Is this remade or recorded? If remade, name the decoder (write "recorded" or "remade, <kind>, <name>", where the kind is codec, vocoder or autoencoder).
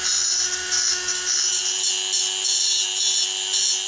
recorded